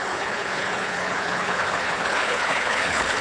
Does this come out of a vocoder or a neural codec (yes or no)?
yes